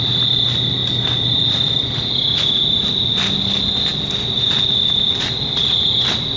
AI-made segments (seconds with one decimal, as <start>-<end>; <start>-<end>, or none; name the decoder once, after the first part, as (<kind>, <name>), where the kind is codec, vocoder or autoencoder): none